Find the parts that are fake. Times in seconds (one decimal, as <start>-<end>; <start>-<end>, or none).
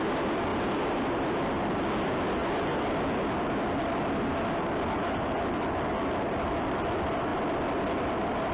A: none